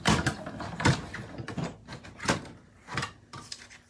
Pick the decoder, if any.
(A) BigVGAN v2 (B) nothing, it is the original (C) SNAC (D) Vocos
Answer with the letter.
B